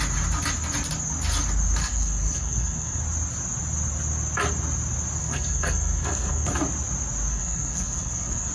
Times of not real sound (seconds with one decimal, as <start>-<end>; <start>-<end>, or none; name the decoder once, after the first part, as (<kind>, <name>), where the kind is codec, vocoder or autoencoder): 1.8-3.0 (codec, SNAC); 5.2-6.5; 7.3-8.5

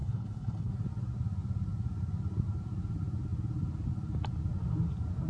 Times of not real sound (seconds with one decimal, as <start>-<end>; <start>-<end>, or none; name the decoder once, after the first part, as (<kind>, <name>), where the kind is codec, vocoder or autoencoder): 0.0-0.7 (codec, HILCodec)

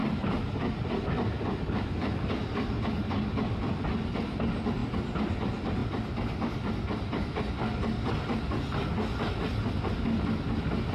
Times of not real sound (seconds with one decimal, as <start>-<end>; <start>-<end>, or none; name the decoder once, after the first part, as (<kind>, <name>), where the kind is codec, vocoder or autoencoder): none

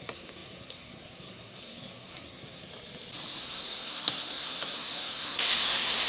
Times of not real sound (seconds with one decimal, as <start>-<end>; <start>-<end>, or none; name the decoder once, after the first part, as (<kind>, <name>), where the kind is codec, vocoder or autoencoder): 0.0-2.7 (codec, SNAC); 3.4-6.1

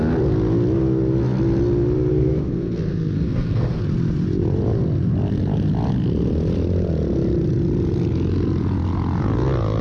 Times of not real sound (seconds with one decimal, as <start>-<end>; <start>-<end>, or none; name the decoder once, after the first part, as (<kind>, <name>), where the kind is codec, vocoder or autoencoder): 2.1-3.8 (codec, SNAC)

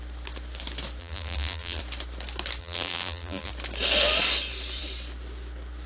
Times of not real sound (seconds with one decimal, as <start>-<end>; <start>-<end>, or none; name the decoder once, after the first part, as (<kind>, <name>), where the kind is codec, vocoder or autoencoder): 1.0-1.8 (vocoder, BigVGAN v2); 2.6-3.5

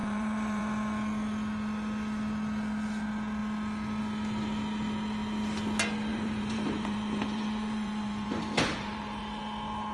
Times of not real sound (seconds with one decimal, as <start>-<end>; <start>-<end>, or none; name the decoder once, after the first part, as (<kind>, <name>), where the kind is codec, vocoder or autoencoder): 0.0-0.6 (vocoder, BigVGAN v2); 6.1-9.4